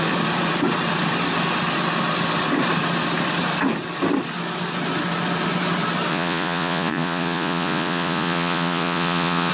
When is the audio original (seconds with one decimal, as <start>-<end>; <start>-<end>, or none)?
0.0-6.1